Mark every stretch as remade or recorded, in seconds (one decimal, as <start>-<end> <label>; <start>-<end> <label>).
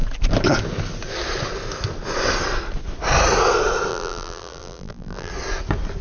0.0-3.9 recorded; 3.9-5.3 remade; 5.3-6.0 recorded